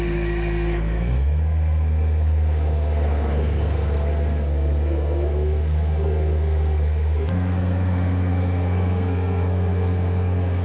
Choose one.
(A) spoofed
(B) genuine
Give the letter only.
A